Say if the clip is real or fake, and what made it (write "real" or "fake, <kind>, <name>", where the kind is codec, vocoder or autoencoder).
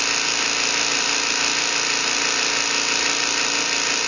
real